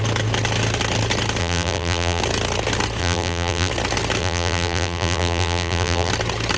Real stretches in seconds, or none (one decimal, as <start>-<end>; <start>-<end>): 0.0-1.4; 2.2-3.0; 3.7-4.2; 6.1-6.6